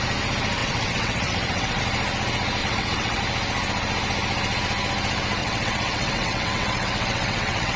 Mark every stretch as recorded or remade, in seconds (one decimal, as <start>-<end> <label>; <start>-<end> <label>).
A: 0.0-0.6 recorded; 0.6-1.8 remade; 1.8-2.6 recorded; 2.6-3.2 remade; 3.2-5.4 recorded; 5.4-7.8 remade